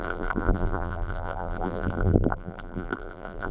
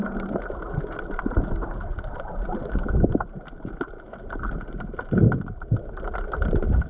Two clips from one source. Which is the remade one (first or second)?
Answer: first